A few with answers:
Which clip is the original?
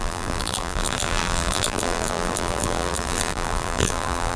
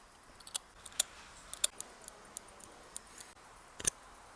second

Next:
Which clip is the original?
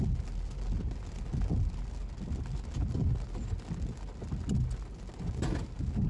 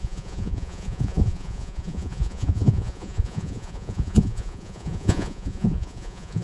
first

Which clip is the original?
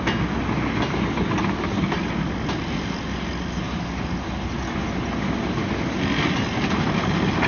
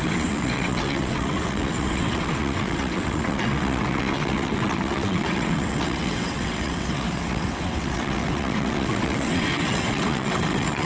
first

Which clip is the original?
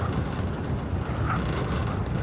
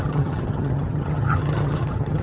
first